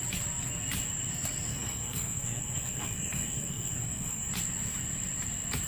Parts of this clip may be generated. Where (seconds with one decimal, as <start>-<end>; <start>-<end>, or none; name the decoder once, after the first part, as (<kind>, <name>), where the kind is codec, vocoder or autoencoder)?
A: 1.5-4.3 (codec, SNAC)